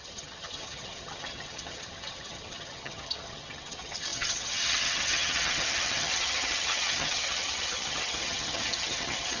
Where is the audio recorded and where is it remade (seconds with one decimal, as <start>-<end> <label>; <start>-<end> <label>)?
0.0-9.4 remade